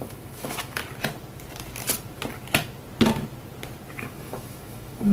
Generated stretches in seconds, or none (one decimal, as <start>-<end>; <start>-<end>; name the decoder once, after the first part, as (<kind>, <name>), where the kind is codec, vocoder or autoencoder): 0.0-0.8 (autoencoder, DAC-VAE); 3.9-5.1